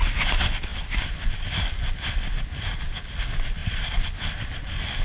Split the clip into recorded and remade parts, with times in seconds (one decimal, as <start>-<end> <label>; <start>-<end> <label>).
0.0-0.7 recorded; 0.7-2.4 remade; 2.4-5.0 recorded